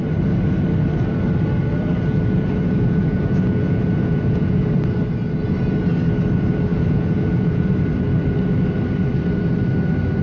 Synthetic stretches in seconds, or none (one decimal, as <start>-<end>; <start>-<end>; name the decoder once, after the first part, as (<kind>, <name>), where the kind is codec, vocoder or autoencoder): 1.6-4.7 (vocoder, Vocos); 6.7-7.7